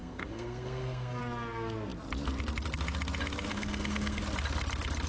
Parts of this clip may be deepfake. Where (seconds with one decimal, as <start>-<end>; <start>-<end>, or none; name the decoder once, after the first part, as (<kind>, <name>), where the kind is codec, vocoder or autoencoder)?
0.0-1.2 (codec, SNAC); 3.5-4.2